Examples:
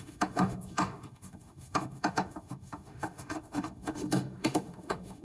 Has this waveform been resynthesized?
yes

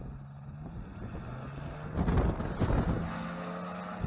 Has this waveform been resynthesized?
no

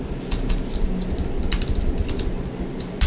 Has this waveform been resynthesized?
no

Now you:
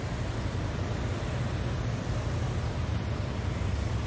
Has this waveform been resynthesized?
no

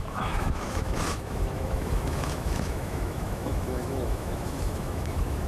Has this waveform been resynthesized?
yes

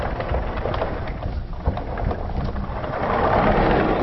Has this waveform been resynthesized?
no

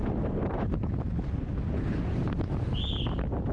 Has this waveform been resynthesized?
no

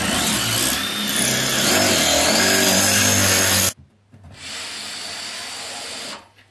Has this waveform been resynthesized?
no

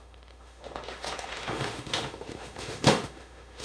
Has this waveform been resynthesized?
yes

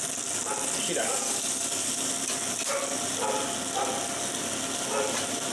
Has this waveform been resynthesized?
no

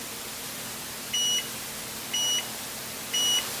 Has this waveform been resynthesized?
no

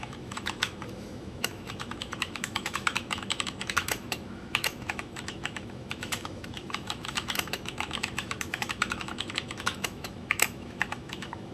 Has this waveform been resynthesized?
yes